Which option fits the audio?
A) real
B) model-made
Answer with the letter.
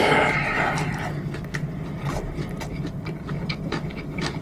A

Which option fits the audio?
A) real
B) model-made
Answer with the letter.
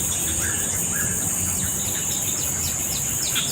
A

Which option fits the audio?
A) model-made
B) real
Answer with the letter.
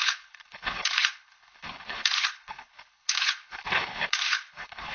A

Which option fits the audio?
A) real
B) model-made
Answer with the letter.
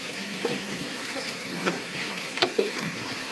B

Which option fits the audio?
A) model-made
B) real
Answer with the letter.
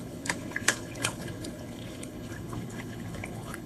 A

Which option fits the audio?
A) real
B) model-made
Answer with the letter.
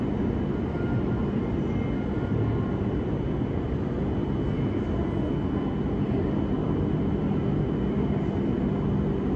A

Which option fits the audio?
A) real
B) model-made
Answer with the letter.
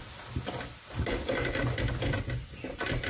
A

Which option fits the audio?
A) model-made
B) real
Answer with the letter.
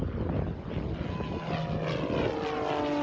B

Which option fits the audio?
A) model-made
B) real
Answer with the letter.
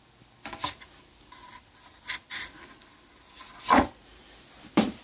A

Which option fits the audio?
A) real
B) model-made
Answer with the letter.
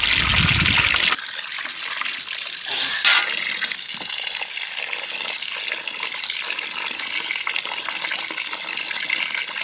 A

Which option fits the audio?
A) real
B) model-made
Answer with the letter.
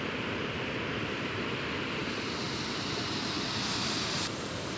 A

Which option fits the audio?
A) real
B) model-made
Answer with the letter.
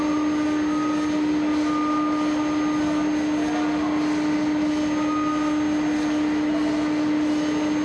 A